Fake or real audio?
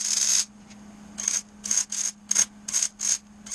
real